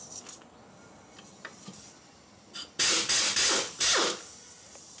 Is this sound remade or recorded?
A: recorded